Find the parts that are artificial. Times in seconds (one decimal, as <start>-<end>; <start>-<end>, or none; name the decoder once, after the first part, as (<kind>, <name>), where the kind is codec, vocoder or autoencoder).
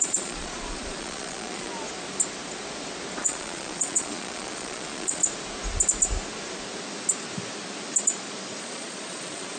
0.0-1.7 (vocoder, Vocos); 3.2-5.2; 8.6-9.6